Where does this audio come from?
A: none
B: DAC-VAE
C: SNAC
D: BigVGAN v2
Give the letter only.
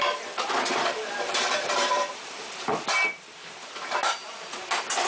D